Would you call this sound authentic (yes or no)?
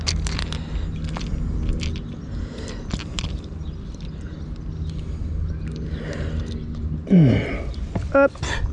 yes